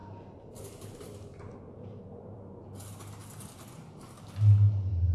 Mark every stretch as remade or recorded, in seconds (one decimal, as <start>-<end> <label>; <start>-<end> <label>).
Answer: 0.0-5.1 recorded